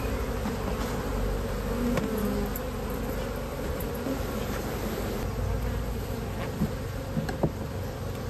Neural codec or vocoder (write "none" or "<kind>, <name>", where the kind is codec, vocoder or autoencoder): none